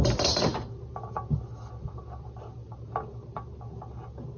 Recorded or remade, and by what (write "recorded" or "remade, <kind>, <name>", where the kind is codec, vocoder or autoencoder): recorded